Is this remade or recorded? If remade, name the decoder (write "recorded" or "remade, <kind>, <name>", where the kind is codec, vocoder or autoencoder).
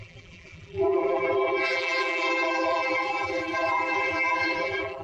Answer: remade, vocoder, BigVGAN v2